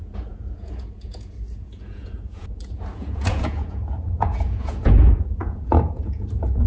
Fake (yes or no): yes